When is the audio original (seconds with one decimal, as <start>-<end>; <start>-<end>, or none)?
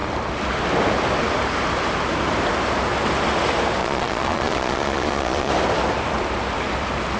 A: 0.0-3.8; 5.5-7.2